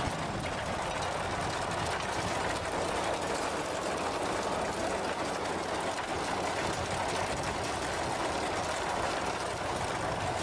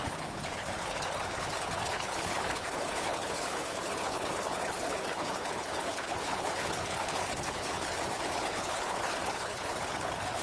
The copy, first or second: second